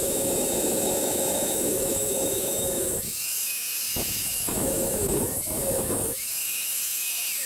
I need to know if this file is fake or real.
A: fake